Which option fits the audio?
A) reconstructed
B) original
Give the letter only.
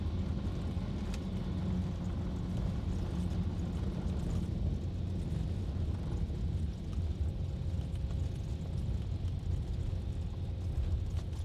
B